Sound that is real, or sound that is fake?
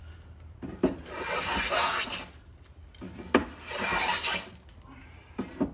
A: real